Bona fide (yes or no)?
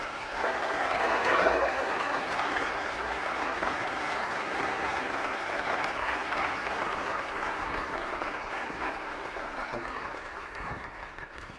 no